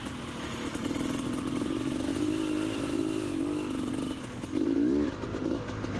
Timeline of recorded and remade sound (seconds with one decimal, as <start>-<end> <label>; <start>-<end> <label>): 0.0-6.0 recorded